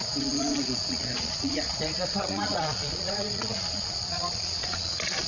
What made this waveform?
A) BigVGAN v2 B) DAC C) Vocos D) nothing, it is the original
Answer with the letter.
C